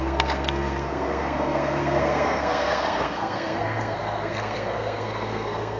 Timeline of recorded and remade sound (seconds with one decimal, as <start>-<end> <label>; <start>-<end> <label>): 0.0-5.8 remade